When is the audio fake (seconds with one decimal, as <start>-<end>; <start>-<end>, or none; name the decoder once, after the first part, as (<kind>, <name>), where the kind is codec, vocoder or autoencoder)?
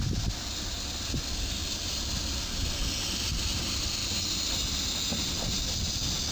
none